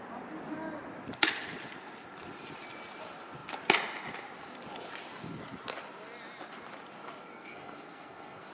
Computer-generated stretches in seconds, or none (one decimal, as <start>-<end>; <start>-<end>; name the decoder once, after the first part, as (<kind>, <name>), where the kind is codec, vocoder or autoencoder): 7.3-8.5 (codec, SNAC)